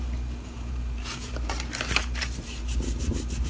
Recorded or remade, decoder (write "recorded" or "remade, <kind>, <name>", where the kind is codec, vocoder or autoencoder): remade, vocoder, BigVGAN v2